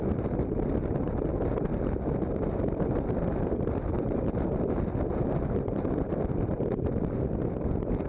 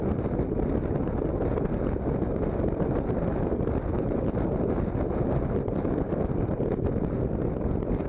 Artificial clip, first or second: first